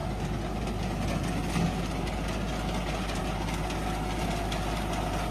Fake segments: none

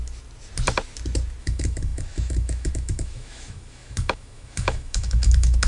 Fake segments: 1.4-5.7 (autoencoder, DAC-VAE)